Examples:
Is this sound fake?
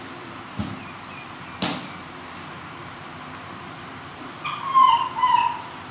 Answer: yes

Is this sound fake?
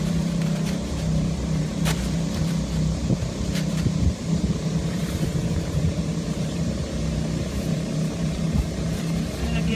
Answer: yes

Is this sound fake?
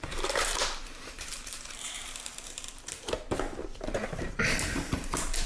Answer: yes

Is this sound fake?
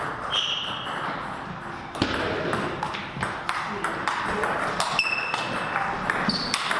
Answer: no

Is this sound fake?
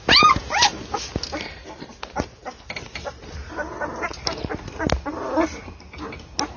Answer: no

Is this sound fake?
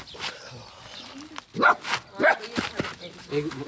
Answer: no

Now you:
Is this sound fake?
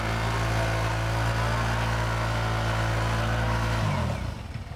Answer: no